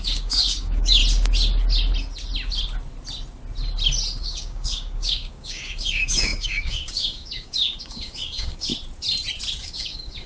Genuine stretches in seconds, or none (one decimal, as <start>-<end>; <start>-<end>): 1.0-4.2; 8.7-9.6